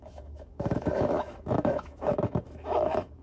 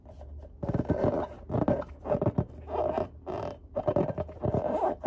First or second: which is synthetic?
first